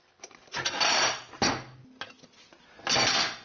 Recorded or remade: recorded